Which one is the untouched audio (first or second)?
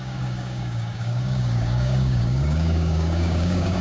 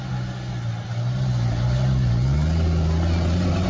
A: second